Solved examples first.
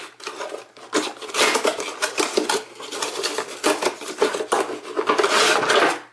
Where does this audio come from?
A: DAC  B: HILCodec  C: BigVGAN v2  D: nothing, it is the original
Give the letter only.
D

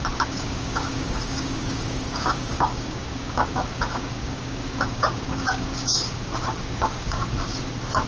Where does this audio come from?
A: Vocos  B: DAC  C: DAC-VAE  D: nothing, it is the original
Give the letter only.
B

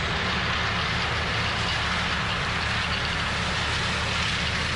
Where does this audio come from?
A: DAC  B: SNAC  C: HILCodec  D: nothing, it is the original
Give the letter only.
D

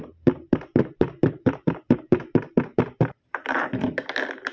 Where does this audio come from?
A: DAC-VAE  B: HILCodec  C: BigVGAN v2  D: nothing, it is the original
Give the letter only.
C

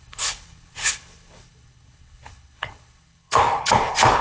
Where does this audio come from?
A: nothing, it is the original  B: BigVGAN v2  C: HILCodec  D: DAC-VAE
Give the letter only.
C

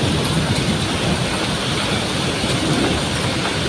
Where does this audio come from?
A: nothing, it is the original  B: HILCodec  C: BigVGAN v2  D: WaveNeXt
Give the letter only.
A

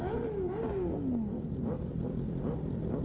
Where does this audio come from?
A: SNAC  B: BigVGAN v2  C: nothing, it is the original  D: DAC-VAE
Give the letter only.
C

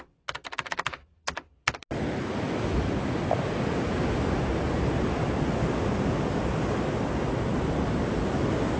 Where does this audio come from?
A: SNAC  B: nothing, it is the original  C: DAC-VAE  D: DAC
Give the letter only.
B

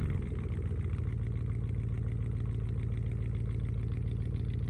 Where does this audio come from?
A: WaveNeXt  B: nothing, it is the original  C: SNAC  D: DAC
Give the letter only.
B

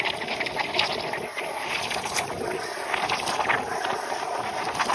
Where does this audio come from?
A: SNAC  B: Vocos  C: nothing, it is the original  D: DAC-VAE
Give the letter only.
C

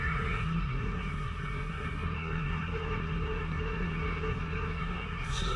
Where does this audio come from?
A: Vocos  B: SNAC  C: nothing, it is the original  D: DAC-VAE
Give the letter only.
B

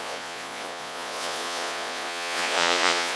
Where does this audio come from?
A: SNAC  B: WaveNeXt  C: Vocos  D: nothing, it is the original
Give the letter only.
C